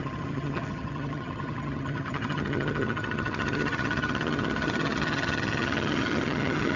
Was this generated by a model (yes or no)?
yes